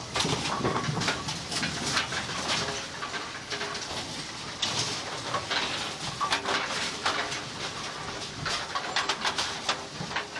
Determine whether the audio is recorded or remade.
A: recorded